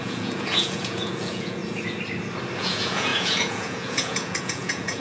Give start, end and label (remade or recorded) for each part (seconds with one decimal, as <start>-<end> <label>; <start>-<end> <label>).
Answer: 0.0-1.6 remade; 1.6-2.6 recorded; 2.6-5.0 remade